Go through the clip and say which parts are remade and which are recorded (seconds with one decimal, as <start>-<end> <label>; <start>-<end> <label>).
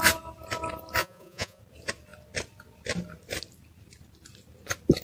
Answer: 0.0-1.0 recorded; 1.0-1.6 remade; 1.6-5.0 recorded